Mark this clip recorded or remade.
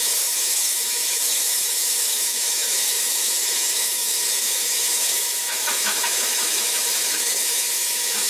remade